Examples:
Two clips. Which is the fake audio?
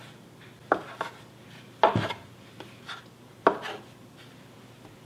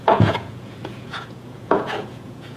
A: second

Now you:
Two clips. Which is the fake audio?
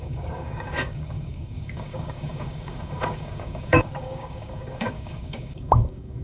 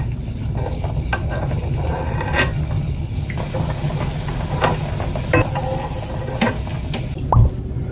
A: first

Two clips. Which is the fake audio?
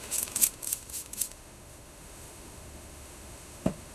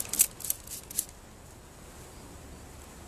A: first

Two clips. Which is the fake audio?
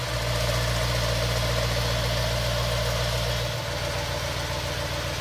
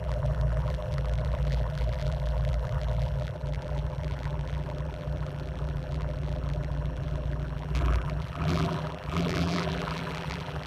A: second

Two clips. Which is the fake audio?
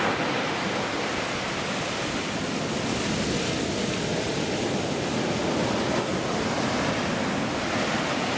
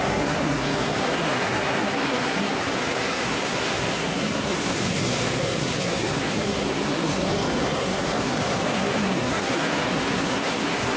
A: second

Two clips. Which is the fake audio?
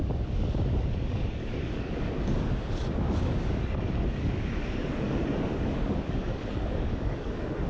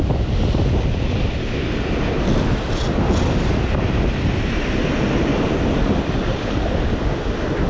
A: first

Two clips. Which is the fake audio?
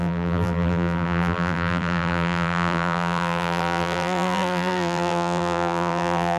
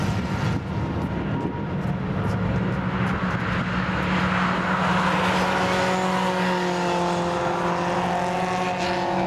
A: first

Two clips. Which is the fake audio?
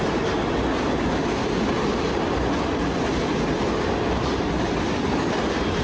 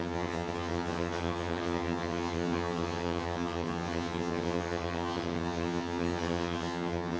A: second